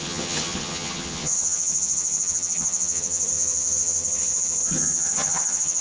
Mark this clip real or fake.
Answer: fake